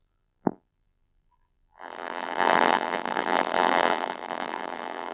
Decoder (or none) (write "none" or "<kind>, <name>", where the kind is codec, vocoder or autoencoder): vocoder, BigVGAN v2